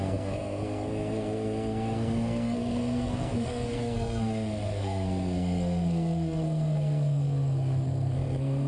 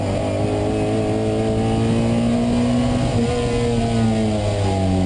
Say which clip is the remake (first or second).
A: first